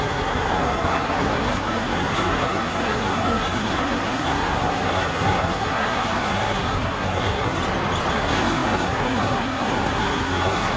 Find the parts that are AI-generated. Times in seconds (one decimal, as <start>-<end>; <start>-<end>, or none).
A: 0.0-7.6; 8.1-10.8